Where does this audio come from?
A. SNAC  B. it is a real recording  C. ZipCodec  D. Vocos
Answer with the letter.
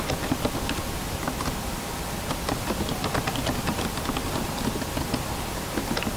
B